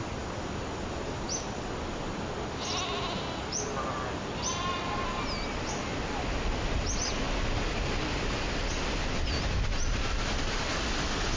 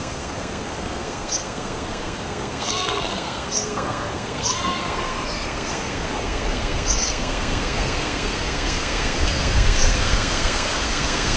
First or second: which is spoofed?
second